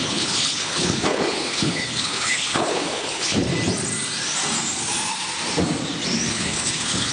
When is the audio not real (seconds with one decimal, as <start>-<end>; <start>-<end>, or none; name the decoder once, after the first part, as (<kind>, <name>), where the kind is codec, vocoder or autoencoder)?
0.0-3.5 (codec, HILCodec); 6.3-7.1